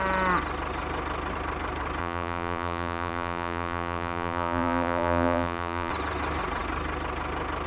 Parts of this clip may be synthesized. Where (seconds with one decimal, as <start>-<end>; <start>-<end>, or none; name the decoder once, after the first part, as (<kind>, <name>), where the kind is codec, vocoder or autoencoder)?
2.0-5.9 (vocoder, BigVGAN v2)